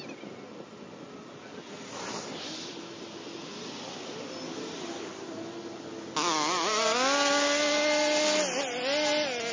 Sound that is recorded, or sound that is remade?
recorded